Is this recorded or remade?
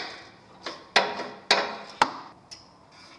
recorded